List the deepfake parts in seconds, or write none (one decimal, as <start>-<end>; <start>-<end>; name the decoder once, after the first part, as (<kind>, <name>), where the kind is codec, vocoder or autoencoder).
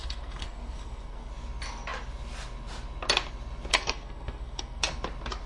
0.0-1.3 (codec, SNAC); 3.7-4.8